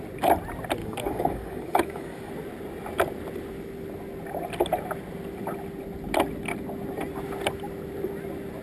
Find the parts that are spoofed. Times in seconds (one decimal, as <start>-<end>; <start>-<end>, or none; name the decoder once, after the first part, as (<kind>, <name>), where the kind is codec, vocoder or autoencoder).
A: 0.8-2.3 (codec, DAC)